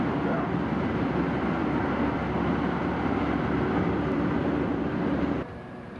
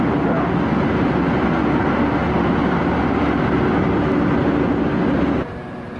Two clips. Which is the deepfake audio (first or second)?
first